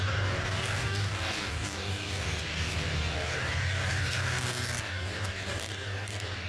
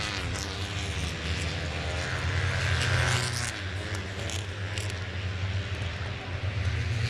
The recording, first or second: second